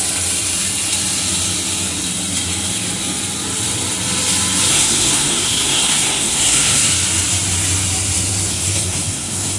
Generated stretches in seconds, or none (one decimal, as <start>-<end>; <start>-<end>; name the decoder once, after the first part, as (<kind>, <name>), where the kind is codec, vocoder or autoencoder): 4.7-6.9 (codec, SNAC); 8.5-9.6